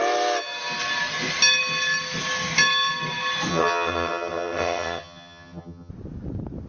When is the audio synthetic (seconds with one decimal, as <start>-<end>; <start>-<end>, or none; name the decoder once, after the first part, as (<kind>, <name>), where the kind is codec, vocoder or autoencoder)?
3.5-5.9 (vocoder, HiFi-GAN)